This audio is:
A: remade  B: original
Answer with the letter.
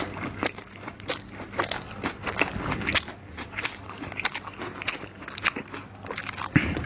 B